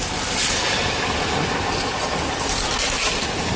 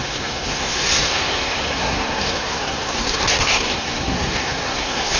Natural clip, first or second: first